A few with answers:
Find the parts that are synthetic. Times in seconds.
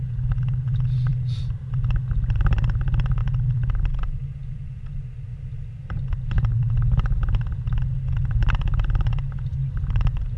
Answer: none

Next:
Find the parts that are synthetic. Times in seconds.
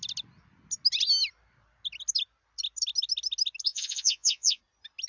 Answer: 3.7-4.6 (vocoder, Vocos)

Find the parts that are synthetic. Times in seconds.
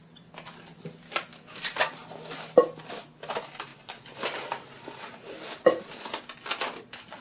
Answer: none